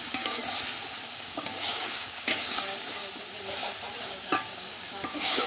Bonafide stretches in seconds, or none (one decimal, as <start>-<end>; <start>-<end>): 0.4-1.1; 3.0-4.0